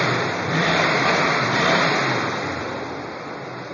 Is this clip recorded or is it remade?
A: remade